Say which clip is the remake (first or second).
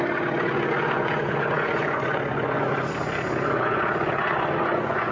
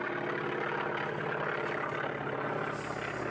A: first